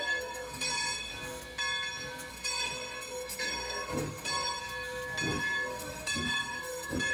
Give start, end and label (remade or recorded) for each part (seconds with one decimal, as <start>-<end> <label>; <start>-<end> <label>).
0.0-1.1 remade; 1.1-2.3 recorded; 2.3-4.6 remade; 4.6-5.3 recorded; 5.3-7.1 remade